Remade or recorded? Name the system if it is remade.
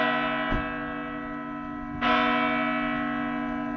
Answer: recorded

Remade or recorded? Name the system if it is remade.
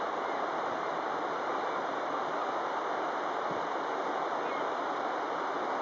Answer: recorded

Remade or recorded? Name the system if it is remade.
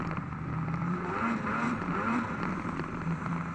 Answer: remade, vocoder, BigVGAN v2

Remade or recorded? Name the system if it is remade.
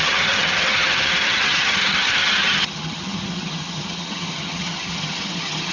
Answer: remade, vocoder, HiFi-GAN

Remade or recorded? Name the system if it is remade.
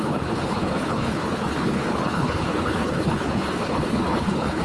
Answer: remade, codec, HILCodec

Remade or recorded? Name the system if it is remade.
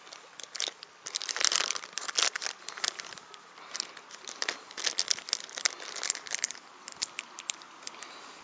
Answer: recorded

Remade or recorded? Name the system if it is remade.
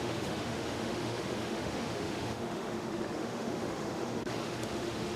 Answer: remade, autoencoder, DAC-VAE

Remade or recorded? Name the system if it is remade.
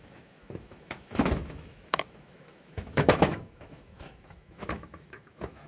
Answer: remade, autoencoder, DAC-VAE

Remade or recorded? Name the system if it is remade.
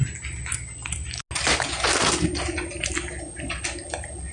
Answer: recorded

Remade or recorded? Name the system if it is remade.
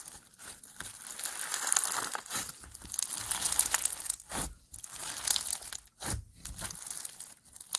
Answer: recorded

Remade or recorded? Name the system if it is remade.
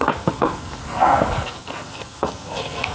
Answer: remade, codec, SNAC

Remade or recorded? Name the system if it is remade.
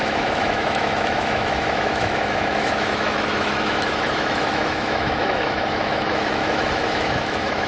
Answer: remade, autoencoder, DAC-VAE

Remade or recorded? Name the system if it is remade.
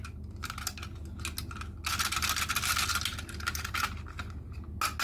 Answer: recorded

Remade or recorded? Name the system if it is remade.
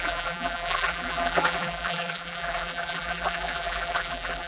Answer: remade, vocoder, BigVGAN v2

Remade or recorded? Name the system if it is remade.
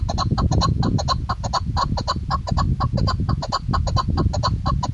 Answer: recorded